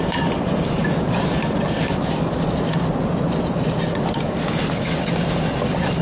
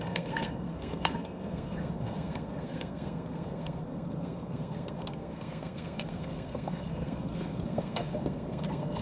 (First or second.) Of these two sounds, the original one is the first